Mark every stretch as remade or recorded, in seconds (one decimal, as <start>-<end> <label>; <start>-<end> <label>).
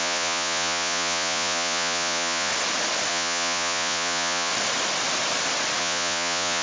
0.0-2.5 remade; 2.5-3.1 recorded; 3.1-4.5 remade; 4.5-5.8 recorded; 5.8-6.6 remade